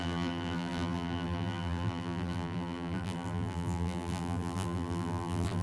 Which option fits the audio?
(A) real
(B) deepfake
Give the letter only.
B